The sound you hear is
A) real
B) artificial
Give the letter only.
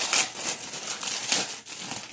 A